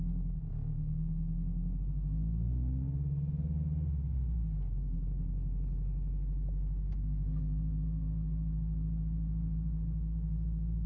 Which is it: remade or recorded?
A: recorded